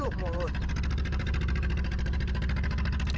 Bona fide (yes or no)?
no